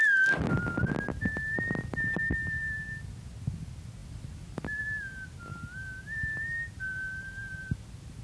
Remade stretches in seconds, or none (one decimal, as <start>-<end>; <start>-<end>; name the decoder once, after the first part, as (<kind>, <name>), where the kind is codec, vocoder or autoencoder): none

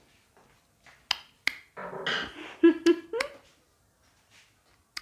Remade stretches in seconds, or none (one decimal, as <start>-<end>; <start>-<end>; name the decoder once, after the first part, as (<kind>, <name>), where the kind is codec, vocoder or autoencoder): none

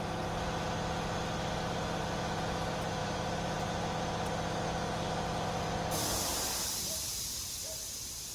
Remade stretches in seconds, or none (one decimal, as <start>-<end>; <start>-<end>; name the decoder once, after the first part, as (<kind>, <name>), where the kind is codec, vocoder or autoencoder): 3.0-3.8 (vocoder, BigVGAN v2); 6.3-7.4

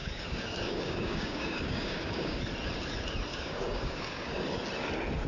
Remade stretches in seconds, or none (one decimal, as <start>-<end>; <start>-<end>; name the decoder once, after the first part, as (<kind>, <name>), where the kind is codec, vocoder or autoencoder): 0.0-2.4 (codec, DAC); 3.3-4.4